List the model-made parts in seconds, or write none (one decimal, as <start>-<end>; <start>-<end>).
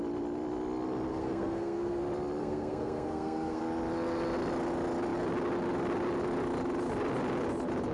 1.1-2.0; 2.4-3.6